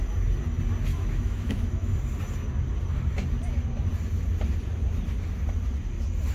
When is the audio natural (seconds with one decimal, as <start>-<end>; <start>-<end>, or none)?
0.0-0.9; 1.9-6.3

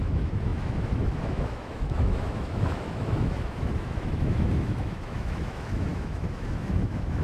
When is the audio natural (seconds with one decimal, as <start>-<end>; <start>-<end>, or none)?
none

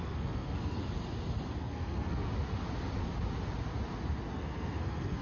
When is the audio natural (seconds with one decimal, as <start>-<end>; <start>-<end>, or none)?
0.8-1.6; 2.3-4.3

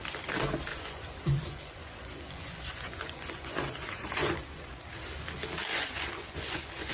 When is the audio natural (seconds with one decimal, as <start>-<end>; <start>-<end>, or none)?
0.0-0.7; 4.8-5.7

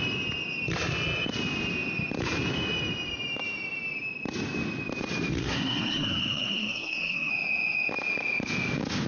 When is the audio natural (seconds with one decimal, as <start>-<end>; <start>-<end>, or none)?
0.0-5.4; 7.3-9.1